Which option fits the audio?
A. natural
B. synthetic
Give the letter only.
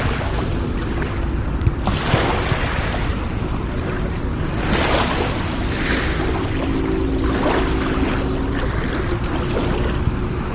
A